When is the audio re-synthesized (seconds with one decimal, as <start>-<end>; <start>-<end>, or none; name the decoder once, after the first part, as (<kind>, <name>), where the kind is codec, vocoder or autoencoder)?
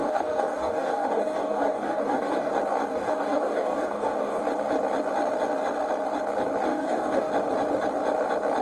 0.0-2.5 (codec, DAC); 2.9-4.4; 6.7-7.3